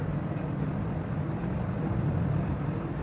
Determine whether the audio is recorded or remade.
recorded